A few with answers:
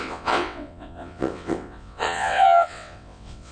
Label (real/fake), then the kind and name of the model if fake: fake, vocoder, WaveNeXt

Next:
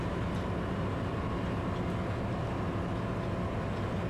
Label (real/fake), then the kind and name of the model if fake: real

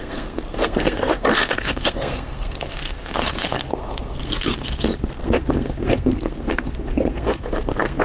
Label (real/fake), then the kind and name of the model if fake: fake, codec, SNAC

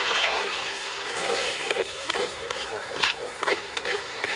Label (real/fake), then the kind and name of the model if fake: fake, codec, SNAC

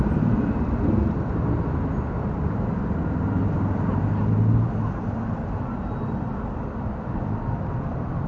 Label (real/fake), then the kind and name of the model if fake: real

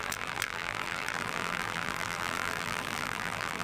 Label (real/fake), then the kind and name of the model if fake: fake, vocoder, BigVGAN v2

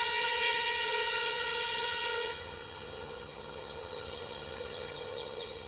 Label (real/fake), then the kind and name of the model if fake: fake, vocoder, HiFi-GAN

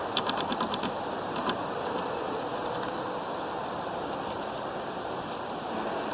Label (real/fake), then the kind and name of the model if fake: real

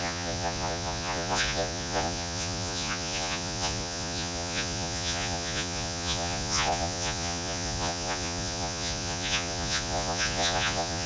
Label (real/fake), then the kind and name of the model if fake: fake, vocoder, Vocos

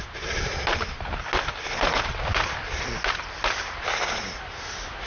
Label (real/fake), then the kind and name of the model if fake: real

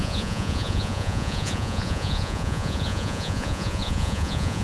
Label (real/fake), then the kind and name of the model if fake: fake, vocoder, Vocos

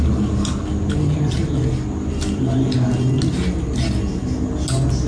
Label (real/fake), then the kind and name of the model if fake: real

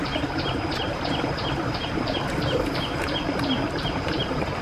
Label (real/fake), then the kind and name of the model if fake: fake, vocoder, BigVGAN v2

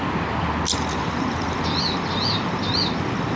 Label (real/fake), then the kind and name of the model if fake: real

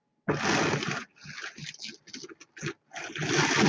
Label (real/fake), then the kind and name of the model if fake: real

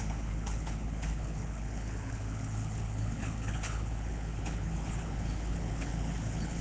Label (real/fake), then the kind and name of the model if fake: fake, codec, HILCodec